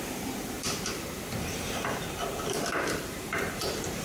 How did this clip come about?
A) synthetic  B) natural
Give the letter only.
A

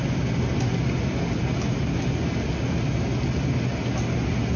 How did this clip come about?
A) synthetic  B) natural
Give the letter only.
B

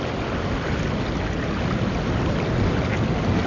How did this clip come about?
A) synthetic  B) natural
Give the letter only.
B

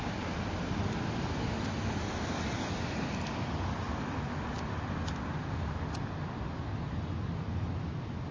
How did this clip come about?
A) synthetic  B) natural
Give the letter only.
B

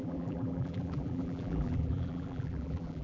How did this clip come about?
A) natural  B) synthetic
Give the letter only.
B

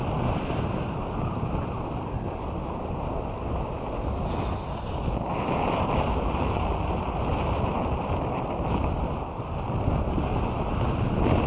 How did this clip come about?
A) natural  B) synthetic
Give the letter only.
A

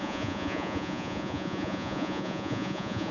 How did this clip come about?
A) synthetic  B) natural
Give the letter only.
A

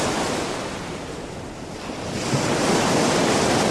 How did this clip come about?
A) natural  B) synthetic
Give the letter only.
A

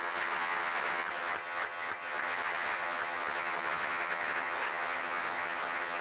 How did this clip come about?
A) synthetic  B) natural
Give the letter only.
A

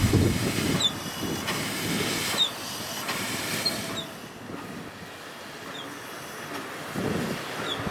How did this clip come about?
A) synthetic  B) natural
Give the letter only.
B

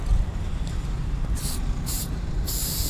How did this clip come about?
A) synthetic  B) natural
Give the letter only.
A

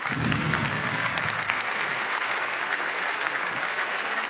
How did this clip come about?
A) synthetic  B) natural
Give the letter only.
A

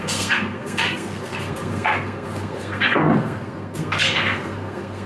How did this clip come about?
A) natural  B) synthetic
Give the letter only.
B